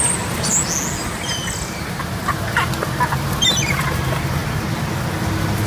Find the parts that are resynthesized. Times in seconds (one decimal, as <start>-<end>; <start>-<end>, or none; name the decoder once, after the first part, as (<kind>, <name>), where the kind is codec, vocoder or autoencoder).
none